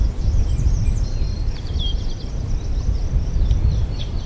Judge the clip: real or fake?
real